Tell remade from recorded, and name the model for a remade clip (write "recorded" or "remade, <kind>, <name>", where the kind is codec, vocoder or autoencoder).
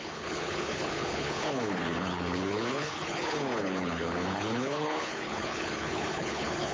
remade, codec, HILCodec